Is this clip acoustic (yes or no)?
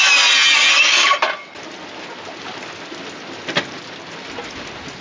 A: yes